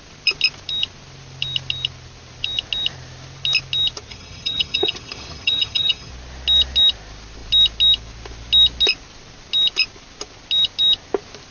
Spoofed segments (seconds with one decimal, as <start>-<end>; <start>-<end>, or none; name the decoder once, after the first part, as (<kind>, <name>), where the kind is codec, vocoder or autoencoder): 4.1-6.1 (vocoder, HiFi-GAN)